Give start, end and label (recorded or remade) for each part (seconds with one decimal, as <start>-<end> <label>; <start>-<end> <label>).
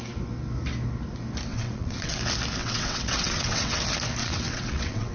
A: 0.0-1.5 recorded; 1.5-2.2 remade; 2.2-2.6 recorded; 2.6-3.8 remade; 3.8-4.2 recorded; 4.2-5.1 remade